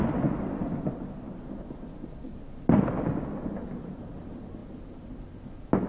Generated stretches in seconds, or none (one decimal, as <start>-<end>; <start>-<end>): none